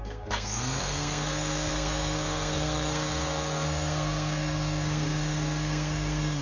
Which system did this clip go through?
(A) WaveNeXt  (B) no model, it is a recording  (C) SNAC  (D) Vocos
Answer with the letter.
C